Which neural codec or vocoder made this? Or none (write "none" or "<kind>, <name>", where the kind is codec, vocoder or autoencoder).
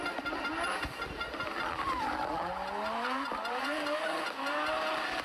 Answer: none